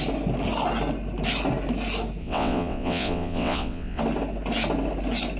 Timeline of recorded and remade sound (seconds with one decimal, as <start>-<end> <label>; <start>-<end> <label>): 0.0-2.2 recorded; 2.2-4.0 remade; 4.0-5.4 recorded